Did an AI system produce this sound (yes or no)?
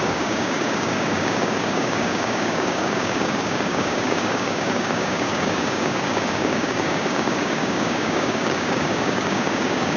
yes